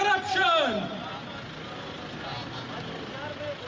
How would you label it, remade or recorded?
recorded